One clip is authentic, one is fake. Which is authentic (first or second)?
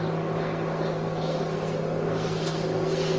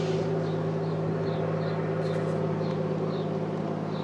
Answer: second